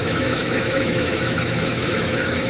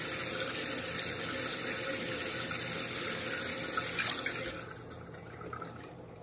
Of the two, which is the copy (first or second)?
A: first